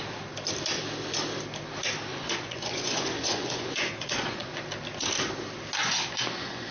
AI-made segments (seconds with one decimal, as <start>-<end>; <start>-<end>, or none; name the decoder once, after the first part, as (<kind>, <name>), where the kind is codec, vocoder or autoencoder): 2.1-4.6 (vocoder, Vocos); 5.8-6.7